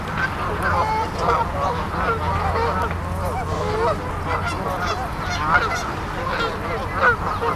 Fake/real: real